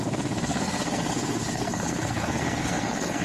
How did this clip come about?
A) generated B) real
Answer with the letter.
A